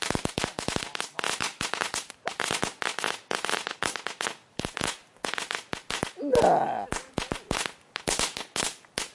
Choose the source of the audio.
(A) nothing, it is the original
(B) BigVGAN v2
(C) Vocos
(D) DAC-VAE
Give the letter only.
A